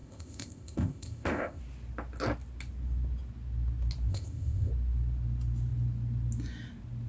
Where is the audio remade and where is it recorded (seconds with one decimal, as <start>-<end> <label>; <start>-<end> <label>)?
0.0-1.6 remade; 1.6-4.1 recorded; 4.1-4.7 remade; 4.7-7.1 recorded